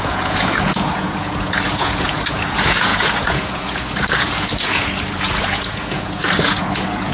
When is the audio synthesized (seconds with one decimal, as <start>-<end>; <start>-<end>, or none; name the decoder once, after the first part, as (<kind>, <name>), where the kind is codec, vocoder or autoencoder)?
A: 0.0-7.1 (vocoder, Vocos)